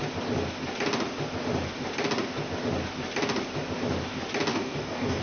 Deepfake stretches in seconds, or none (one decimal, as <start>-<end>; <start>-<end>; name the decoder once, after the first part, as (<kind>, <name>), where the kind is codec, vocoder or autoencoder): 4.5-5.2 (codec, DAC)